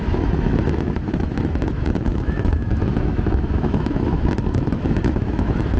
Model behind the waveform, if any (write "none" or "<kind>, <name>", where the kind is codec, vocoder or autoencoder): autoencoder, DAC-VAE